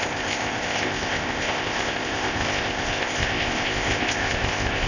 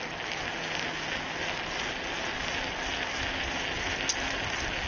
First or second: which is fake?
first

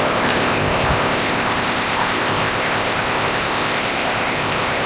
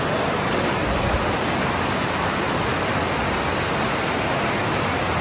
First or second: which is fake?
first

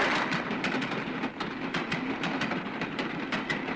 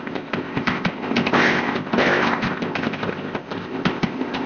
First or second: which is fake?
second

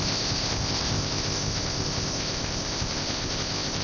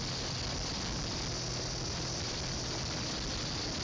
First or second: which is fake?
first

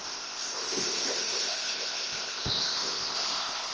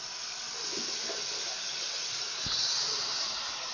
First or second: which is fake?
first